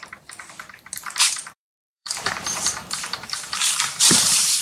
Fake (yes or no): yes